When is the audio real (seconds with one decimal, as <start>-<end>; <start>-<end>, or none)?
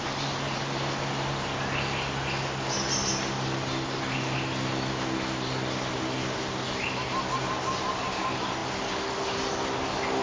0.0-10.2